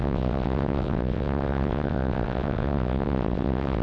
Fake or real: fake